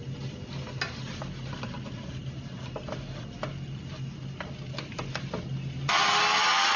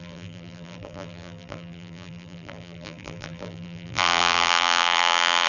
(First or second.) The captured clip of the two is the first